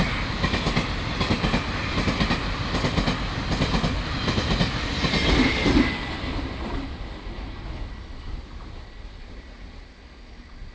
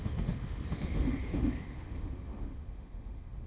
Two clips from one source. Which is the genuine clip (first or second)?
first